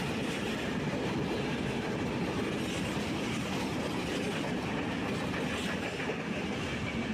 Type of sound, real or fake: real